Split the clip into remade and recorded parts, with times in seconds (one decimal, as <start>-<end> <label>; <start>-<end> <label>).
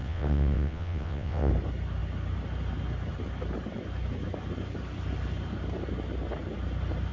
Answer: 0.0-1.5 remade; 1.5-7.1 recorded